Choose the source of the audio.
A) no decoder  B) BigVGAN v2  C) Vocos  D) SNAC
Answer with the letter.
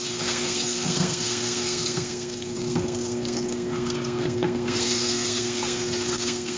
D